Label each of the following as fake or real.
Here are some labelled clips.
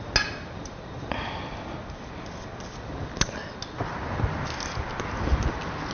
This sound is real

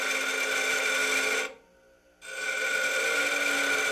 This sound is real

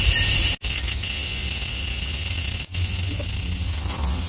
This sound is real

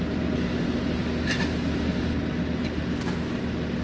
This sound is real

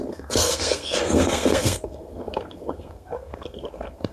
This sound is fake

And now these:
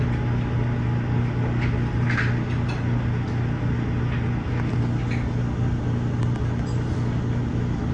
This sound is real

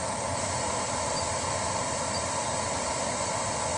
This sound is real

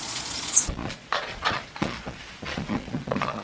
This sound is fake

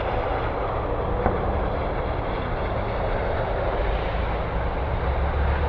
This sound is real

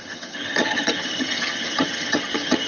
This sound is fake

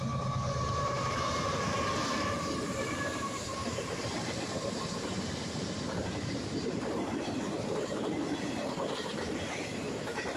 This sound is fake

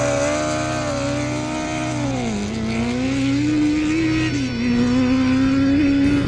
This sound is real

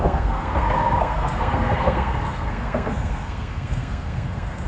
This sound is fake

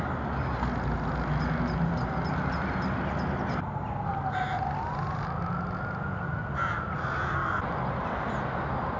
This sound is real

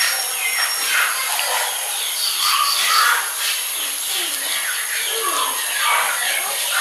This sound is real